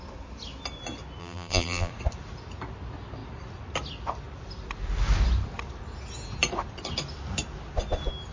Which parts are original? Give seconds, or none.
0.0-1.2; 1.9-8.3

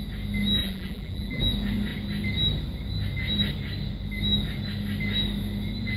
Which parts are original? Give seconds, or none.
0.0-0.6; 1.4-6.0

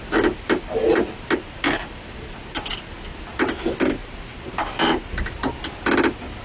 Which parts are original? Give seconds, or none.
0.0-6.4

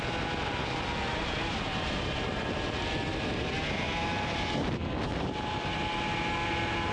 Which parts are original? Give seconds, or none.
0.0-1.1; 2.4-6.9

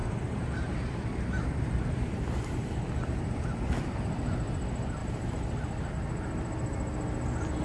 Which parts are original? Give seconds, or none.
3.4-7.6

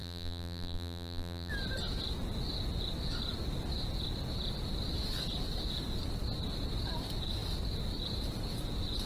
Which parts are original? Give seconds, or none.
1.5-9.1